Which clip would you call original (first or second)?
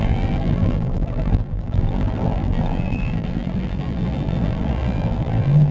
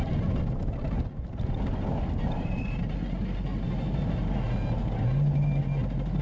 second